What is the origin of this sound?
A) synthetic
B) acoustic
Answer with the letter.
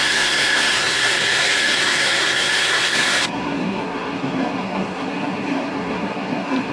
A